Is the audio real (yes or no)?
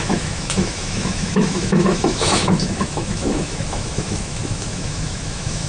no